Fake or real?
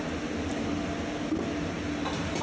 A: real